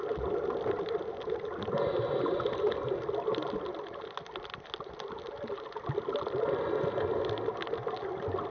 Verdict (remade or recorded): recorded